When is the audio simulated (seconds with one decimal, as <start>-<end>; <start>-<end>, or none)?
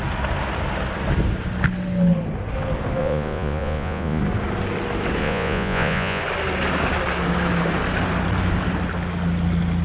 3.0-4.2; 5.2-6.2